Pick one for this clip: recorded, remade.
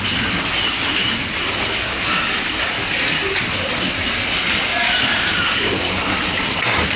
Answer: recorded